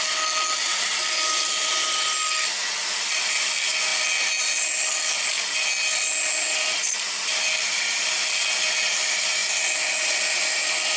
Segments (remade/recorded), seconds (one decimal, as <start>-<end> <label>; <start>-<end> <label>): 0.0-11.0 recorded